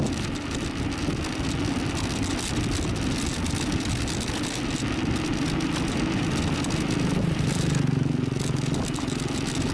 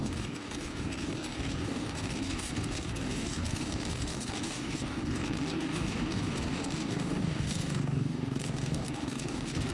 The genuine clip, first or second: first